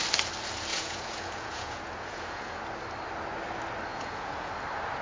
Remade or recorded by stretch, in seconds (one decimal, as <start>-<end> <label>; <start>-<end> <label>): 0.0-0.7 recorded; 0.7-2.6 remade; 2.6-3.9 recorded; 3.9-4.5 remade; 4.5-5.0 recorded